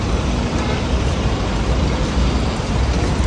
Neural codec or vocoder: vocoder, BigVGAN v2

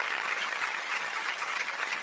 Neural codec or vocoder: vocoder, HiFi-GAN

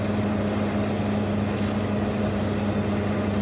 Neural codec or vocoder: none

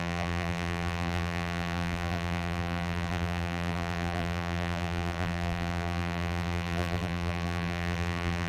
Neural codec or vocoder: vocoder, BigVGAN v2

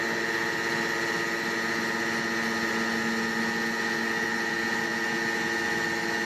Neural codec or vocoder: none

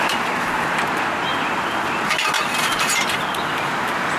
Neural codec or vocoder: none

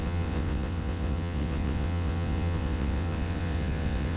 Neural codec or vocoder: vocoder, WaveNeXt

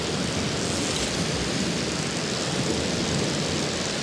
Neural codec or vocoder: none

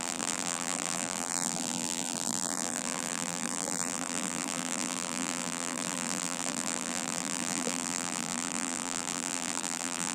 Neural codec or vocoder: vocoder, BigVGAN v2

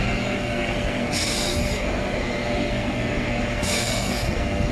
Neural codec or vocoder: codec, SNAC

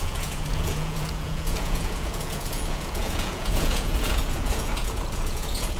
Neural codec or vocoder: vocoder, Vocos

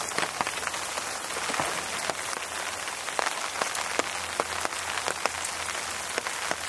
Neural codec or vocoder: none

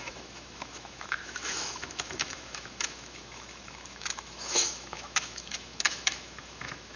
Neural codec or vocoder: autoencoder, DAC-VAE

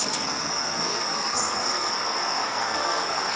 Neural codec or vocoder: codec, SNAC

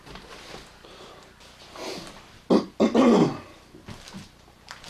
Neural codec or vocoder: none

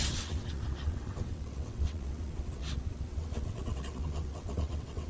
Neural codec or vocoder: vocoder, WaveNeXt